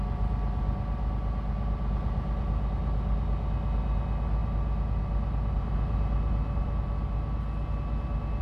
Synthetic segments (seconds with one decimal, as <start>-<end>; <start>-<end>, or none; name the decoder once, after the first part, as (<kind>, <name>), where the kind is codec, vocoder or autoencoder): none